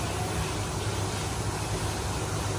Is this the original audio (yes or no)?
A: yes